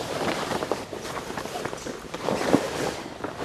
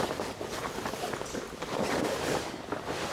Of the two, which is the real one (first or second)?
second